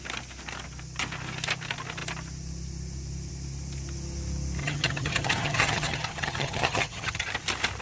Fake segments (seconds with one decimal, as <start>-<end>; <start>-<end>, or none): 4.6-7.3